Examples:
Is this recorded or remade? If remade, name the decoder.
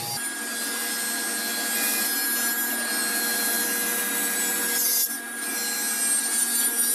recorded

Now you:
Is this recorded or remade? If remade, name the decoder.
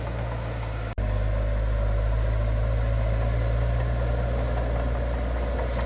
recorded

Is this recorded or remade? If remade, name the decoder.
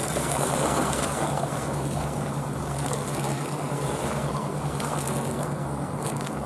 remade, codec, SNAC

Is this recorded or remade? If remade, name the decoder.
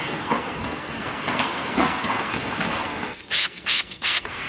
remade, codec, SNAC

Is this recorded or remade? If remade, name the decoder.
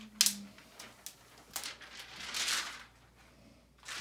recorded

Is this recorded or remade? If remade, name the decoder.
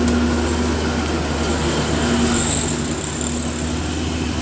recorded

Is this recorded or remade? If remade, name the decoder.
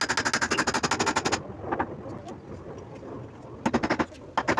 recorded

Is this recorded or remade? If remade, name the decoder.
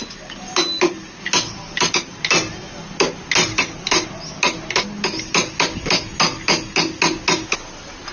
recorded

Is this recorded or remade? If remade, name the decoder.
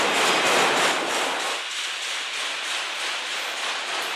recorded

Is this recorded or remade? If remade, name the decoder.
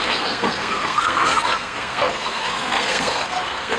remade, codec, SNAC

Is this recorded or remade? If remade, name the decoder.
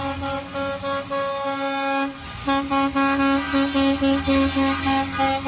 recorded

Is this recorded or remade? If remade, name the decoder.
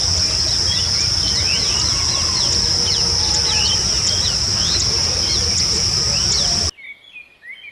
recorded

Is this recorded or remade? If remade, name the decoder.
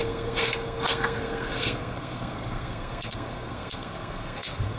remade, codec, SNAC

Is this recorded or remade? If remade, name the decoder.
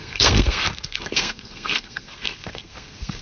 remade, codec, SNAC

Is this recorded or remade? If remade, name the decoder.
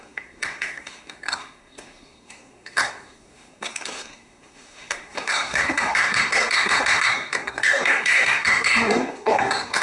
remade, codec, SNAC